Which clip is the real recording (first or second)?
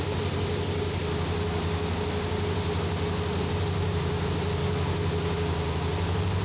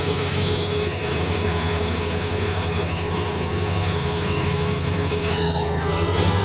first